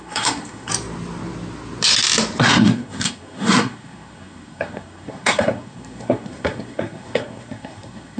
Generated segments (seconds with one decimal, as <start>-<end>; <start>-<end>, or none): 0.0-0.7; 2.4-8.2